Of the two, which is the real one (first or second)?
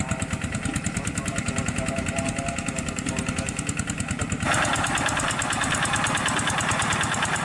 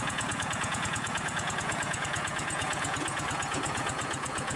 first